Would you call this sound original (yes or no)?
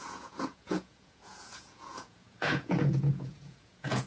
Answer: no